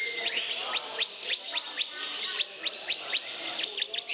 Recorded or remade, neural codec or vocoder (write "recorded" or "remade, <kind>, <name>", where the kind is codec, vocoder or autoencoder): remade, vocoder, BigVGAN v2